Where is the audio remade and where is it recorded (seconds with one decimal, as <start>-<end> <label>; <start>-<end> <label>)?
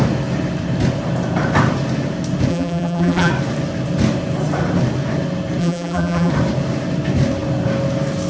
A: 0.0-2.5 recorded; 2.5-3.3 remade; 3.3-5.6 recorded; 5.6-6.3 remade; 6.3-8.3 recorded